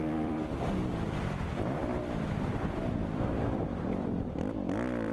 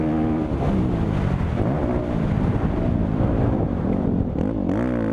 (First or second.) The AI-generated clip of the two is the first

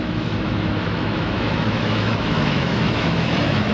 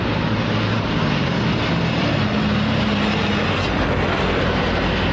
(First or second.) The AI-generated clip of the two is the first